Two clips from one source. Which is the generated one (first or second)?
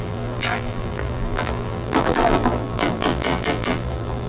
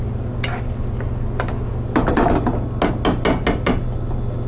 first